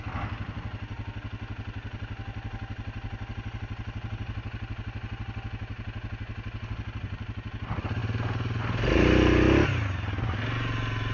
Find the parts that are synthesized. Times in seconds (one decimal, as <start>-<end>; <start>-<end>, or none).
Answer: none

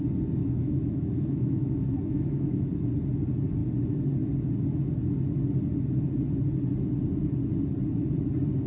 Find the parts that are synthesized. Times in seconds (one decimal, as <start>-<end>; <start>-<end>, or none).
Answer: 0.4-2.7

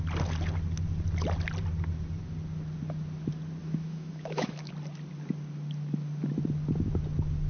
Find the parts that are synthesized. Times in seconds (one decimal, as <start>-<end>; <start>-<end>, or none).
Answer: 3.6-4.7

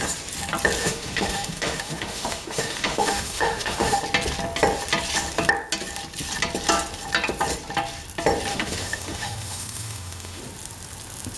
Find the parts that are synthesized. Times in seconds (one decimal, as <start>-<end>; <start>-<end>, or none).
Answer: 0.8-4.0; 8.5-10.4

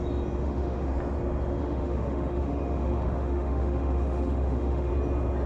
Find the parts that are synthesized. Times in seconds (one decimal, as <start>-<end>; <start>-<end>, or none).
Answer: 0.4-0.9; 1.6-4.9